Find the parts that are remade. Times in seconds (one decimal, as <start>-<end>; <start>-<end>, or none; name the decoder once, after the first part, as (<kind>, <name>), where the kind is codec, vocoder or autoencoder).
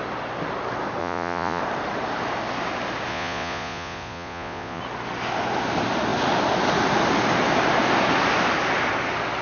1.0-1.6 (vocoder, Vocos); 3.1-4.8